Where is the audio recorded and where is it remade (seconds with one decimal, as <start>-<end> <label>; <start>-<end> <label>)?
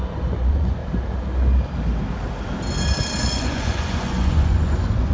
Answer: 0.0-0.8 remade; 0.8-3.2 recorded; 3.2-5.1 remade